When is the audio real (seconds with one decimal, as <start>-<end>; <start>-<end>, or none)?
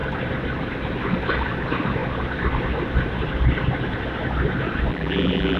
0.0-4.9